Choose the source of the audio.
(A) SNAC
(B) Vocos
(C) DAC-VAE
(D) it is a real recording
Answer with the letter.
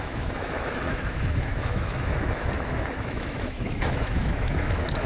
C